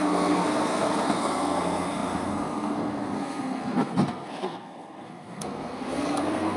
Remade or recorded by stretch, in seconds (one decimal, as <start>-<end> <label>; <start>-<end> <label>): 0.0-6.6 remade